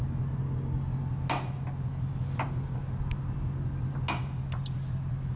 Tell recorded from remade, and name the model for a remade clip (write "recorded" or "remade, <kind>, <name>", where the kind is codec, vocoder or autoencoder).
recorded